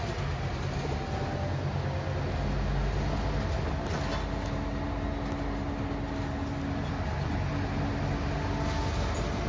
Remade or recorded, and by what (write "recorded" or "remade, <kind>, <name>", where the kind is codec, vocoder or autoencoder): recorded